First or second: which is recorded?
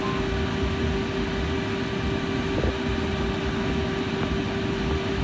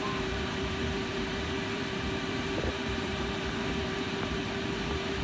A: first